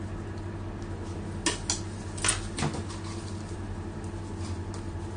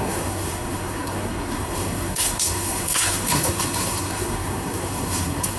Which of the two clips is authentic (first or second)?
first